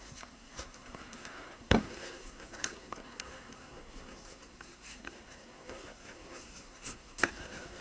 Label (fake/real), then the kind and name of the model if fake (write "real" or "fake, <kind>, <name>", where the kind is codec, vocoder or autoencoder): fake, codec, SNAC